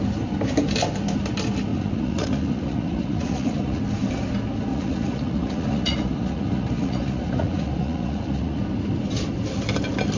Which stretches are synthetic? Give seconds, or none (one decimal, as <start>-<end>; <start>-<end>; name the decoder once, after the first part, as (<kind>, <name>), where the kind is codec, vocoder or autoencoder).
1.7-3.8 (vocoder, Vocos); 4.7-8.6